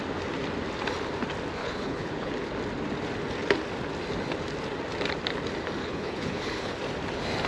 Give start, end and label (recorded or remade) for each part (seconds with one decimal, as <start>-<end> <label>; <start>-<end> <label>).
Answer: 0.0-1.6 recorded; 1.6-2.3 remade; 2.3-5.8 recorded; 5.8-6.7 remade; 6.7-7.5 recorded